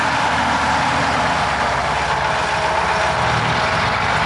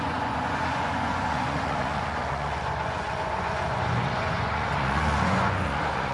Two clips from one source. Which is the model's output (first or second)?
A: second